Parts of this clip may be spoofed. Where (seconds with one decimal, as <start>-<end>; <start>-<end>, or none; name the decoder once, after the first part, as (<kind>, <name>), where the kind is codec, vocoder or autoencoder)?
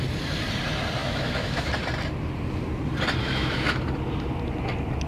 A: 1.0-1.7 (autoencoder, DAC-VAE); 3.2-3.8